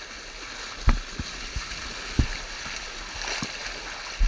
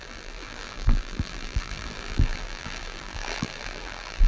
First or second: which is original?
first